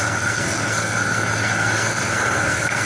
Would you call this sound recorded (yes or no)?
no